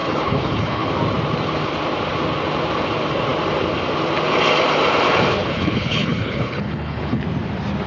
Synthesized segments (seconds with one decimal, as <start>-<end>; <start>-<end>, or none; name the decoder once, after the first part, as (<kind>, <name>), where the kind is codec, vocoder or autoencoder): 0.0-0.9 (codec, HILCodec); 5.4-7.2